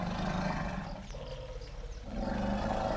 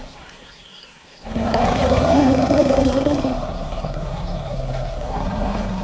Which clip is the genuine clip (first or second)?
first